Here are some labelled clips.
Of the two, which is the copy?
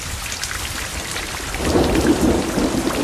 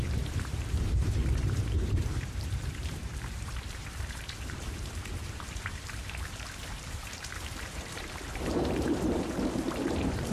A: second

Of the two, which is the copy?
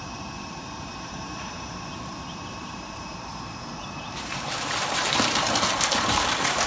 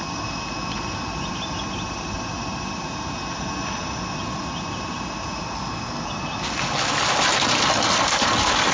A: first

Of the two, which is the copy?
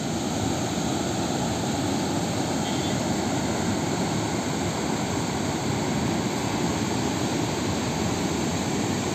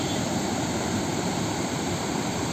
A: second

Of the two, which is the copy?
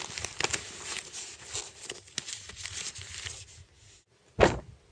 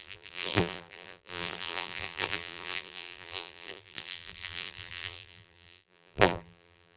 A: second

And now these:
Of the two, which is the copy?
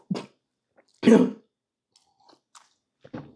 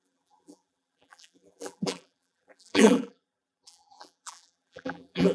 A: second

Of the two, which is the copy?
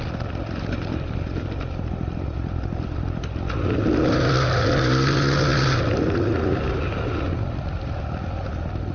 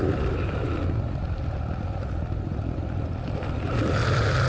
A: second